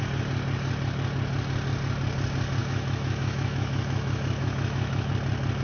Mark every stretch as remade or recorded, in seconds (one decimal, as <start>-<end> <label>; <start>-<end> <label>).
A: 0.0-2.6 recorded; 2.6-5.1 remade; 5.1-5.6 recorded